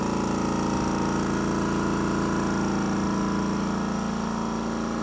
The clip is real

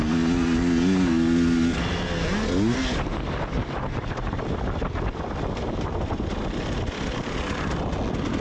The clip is real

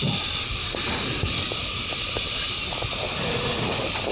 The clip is real